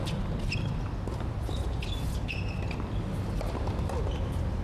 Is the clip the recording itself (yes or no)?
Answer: yes